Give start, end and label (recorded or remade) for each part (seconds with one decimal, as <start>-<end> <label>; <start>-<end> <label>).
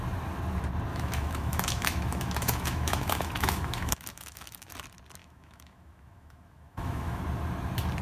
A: 0.0-0.9 recorded; 0.9-4.7 remade; 4.7-5.2 recorded; 5.2-7.2 remade; 7.2-8.0 recorded